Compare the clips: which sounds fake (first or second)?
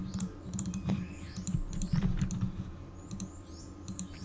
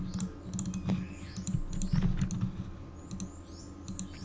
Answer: first